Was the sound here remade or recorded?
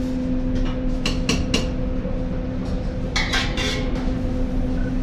recorded